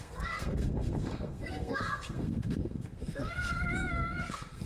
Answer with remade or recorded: remade